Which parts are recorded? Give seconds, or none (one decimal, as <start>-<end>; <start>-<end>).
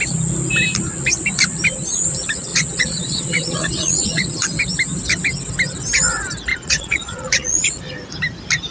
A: 0.0-2.5; 4.4-6.5; 7.8-8.7